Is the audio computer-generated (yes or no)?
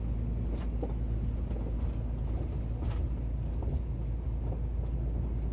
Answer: no